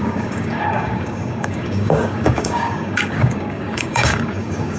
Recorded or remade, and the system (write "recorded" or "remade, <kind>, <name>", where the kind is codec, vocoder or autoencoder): remade, codec, DAC